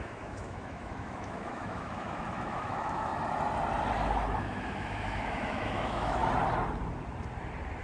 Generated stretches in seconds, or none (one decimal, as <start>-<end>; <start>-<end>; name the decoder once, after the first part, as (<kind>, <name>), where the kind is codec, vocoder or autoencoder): 0.0-3.1 (autoencoder, DAC-VAE); 4.4-6.2